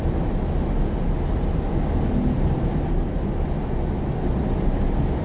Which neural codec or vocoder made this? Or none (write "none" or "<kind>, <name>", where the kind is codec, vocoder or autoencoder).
none